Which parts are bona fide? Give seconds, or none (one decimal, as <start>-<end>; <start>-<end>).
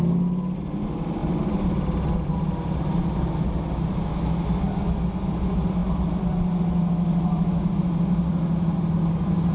0.0-9.5